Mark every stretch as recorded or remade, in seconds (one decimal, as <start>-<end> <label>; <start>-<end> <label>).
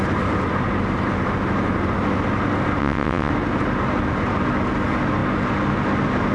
0.0-2.8 recorded; 2.8-3.3 remade; 3.3-6.3 recorded